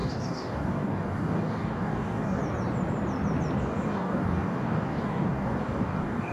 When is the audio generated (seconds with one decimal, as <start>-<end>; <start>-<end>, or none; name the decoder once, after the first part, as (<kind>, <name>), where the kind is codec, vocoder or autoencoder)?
0.0-2.4 (codec, DAC); 3.6-6.3